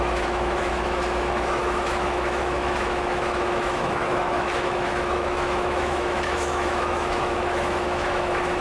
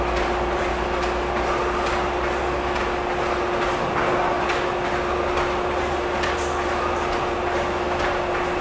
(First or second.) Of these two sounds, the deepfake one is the first